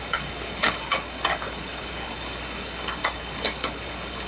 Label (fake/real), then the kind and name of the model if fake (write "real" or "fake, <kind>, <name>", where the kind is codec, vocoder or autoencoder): fake, codec, DAC